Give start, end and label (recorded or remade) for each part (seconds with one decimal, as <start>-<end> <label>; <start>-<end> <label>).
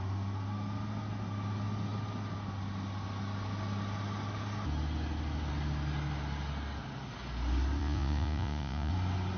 0.0-7.8 recorded; 7.8-8.9 remade; 8.9-9.4 recorded